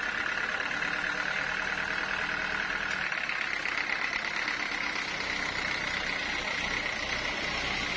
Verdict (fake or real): real